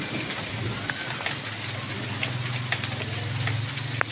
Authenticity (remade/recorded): recorded